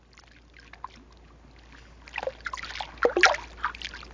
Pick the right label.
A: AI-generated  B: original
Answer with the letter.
B